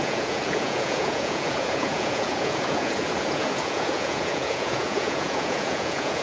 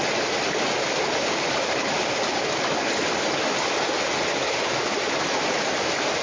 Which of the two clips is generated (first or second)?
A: first